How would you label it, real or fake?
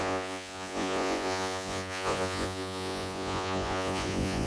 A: fake